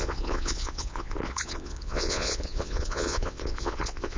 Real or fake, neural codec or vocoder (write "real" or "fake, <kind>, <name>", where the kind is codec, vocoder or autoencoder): fake, vocoder, Vocos